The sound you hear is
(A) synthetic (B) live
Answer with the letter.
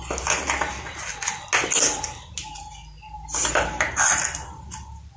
B